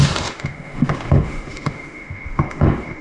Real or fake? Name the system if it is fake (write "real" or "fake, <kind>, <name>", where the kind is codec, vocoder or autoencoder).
fake, autoencoder, DAC-VAE